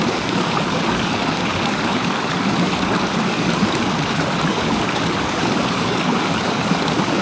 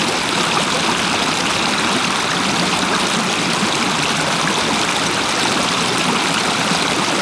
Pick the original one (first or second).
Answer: second